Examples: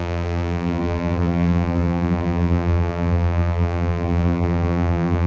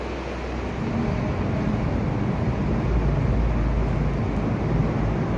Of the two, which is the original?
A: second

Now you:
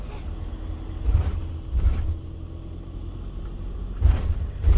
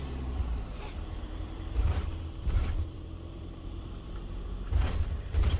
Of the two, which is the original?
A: first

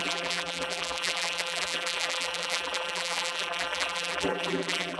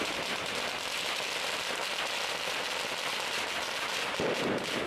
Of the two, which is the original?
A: second